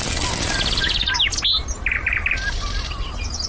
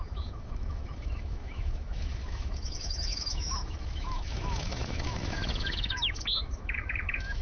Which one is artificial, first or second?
second